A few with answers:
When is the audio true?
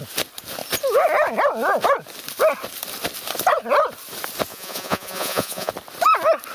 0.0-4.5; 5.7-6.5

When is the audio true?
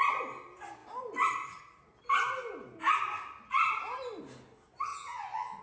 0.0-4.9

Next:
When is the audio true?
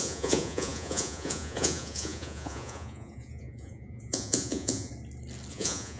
4.9-5.5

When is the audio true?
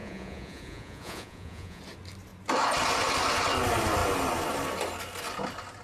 1.8-5.8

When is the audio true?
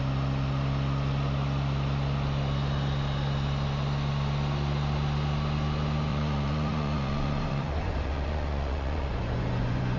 0.0-6.1